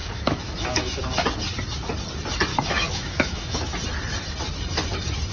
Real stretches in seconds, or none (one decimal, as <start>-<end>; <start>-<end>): 1.0-2.5; 3.7-5.3